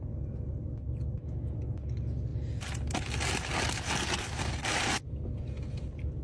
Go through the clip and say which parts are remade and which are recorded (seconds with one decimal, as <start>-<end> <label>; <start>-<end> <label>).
0.0-6.2 recorded